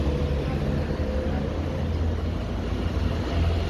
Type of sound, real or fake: real